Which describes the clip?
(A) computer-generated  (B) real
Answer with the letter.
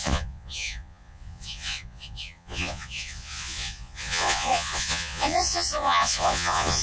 A